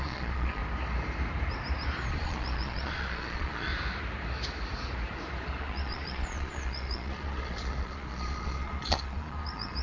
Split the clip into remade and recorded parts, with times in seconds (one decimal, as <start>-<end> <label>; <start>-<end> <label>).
0.0-0.6 remade; 0.6-2.1 recorded; 2.1-3.7 remade; 3.7-5.6 recorded; 5.6-9.8 remade